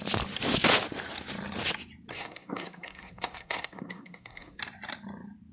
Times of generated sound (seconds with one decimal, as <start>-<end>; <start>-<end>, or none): 2.1-4.6